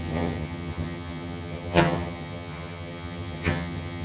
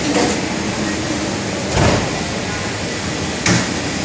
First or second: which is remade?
first